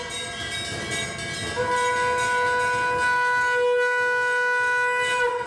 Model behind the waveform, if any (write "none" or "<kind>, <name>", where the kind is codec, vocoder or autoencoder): none